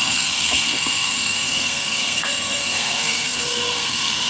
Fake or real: fake